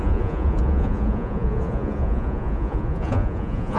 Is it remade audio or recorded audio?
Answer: remade